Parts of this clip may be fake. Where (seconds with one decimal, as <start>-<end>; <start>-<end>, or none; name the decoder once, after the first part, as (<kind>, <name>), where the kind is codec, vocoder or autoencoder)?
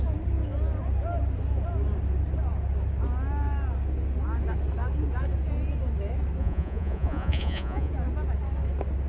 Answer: 6.4-7.9 (vocoder, Vocos)